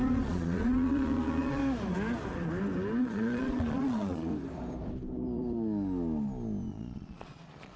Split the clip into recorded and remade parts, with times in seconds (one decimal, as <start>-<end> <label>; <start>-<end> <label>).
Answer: 0.0-1.6 remade; 1.6-3.0 recorded; 3.0-4.3 remade; 4.3-6.7 recorded; 6.7-7.8 remade